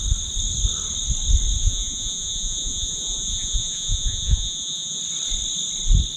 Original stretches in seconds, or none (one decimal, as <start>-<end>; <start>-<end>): 0.0-1.6; 5.0-6.2